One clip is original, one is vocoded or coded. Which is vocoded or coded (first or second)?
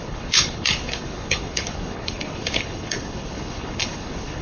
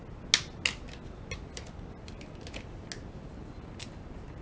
first